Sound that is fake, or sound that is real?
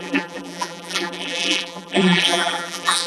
fake